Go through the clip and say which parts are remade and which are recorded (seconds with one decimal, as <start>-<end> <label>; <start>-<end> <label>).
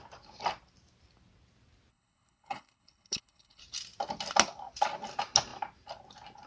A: 0.0-1.9 recorded; 1.9-3.6 remade; 3.6-6.5 recorded